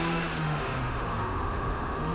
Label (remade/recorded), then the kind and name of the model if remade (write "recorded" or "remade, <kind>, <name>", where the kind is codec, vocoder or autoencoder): remade, autoencoder, DAC-VAE